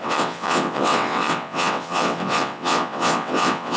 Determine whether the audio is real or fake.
fake